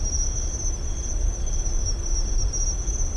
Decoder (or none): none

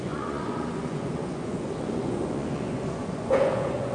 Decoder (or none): vocoder, Vocos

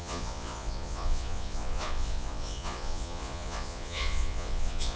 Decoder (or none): vocoder, Vocos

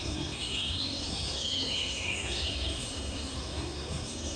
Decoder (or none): codec, SNAC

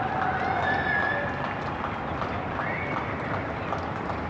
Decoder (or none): none